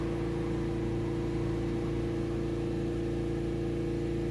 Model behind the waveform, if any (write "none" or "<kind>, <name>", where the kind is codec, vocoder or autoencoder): none